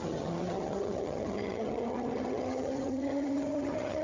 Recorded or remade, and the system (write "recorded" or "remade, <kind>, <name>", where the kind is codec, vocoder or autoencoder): remade, vocoder, HiFi-GAN